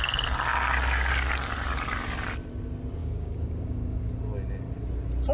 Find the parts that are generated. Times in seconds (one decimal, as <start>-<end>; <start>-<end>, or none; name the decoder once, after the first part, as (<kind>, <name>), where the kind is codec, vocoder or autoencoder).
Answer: 3.0-4.1 (codec, DAC)